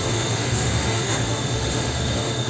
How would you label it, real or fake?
fake